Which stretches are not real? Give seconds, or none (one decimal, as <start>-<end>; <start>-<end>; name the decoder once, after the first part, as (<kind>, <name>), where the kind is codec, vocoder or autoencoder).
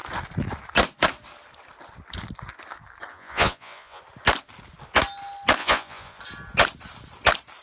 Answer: 3.1-4.0 (vocoder, Vocos); 5.6-6.2